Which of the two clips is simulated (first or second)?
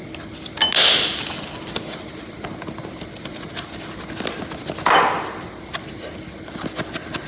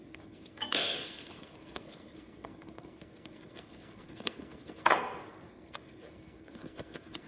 second